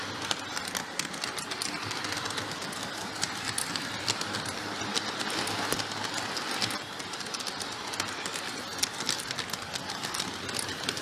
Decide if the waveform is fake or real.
real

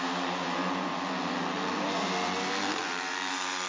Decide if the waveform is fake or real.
fake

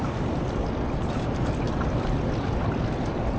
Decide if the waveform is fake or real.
real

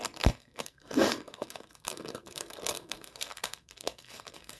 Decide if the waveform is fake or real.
fake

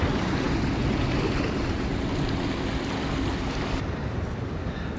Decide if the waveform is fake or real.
real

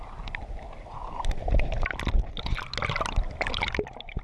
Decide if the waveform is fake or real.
real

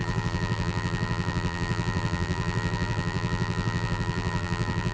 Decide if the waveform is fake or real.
fake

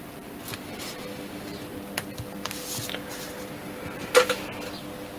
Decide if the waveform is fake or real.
fake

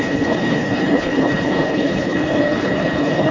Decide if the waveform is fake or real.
fake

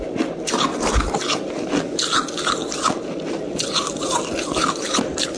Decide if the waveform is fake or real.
real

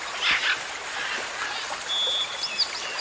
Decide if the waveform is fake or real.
real